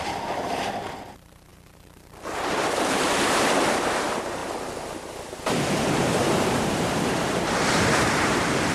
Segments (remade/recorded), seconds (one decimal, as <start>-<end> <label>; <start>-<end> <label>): 0.0-4.4 remade; 4.4-5.7 recorded; 5.7-8.7 remade